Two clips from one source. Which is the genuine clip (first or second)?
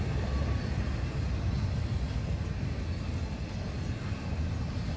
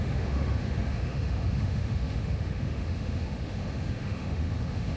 first